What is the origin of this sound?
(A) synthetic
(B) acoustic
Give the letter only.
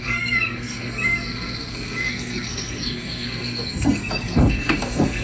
A